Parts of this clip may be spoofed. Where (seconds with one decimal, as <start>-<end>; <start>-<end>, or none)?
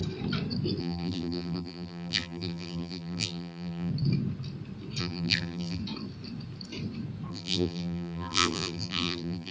0.8-3.9; 5.0-5.8; 7.3-9.5